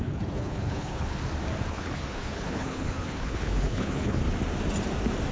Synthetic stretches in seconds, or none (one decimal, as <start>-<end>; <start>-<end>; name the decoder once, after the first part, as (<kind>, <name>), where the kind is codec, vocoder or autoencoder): 0.0-1.2 (codec, HILCodec); 1.7-4.2